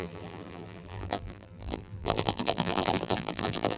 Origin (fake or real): fake